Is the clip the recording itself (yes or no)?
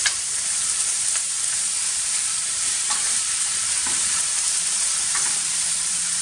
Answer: no